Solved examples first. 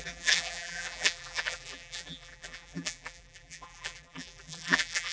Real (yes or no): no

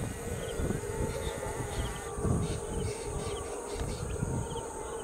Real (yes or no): yes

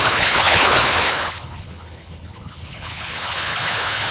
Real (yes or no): no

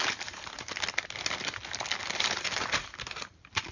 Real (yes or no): yes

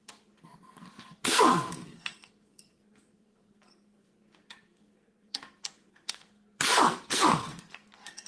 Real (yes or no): no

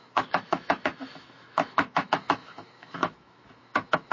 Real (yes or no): no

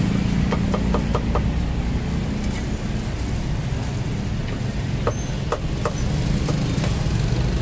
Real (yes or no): yes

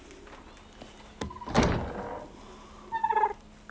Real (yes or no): yes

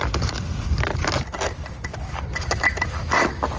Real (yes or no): yes